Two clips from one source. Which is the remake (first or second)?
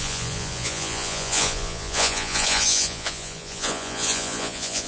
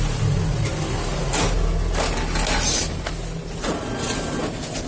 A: first